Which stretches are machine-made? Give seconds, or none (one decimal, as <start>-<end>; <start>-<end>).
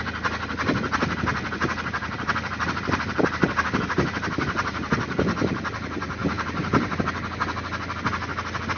2.0-4.9; 6.2-7.0